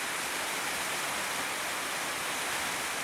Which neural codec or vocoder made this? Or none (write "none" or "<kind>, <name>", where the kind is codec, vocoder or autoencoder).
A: none